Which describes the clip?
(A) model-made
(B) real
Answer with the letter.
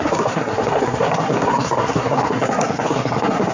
A